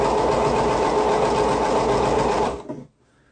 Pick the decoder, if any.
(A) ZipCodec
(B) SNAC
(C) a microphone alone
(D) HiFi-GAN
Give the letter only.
C